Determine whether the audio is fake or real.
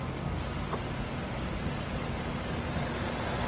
real